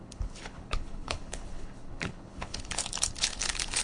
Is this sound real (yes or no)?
no